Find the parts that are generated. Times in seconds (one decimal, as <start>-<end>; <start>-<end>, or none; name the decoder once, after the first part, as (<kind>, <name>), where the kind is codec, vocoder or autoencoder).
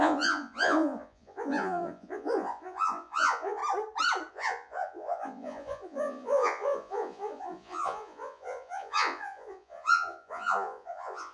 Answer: 0.0-3.6 (vocoder, Vocos); 4.3-11.3